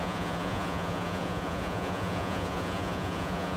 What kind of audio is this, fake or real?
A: fake